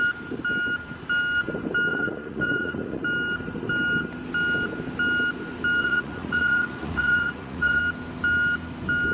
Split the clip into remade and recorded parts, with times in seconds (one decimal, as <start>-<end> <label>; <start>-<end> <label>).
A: 0.0-1.9 recorded; 1.9-3.0 remade; 3.0-5.8 recorded; 5.8-7.8 remade; 7.8-9.1 recorded